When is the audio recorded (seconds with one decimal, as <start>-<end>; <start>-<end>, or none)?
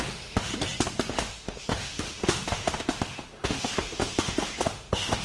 0.5-1.1